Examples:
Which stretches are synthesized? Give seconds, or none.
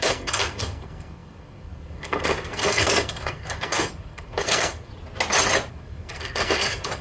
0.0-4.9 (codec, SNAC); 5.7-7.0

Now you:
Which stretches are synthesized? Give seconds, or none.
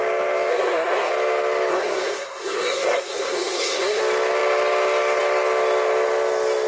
0.5-1.1 (codec, SNAC); 1.7-4.0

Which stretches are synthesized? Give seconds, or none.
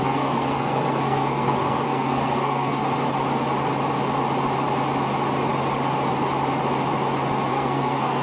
0.0-2.8 (codec, SNAC); 7.5-8.2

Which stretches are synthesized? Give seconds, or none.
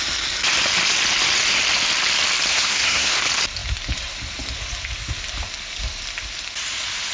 2.5-3.2 (codec, SNAC)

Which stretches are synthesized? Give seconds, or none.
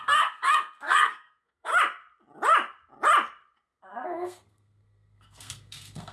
0.0-1.7 (codec, SNAC); 3.8-6.1